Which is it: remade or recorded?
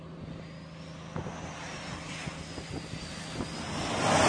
recorded